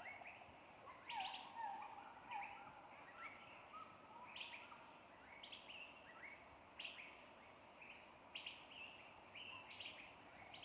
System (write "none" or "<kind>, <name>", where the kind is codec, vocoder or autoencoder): none